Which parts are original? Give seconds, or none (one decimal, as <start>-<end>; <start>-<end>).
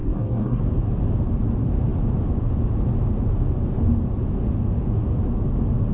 0.6-5.9